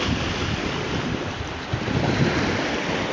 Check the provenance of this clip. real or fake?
real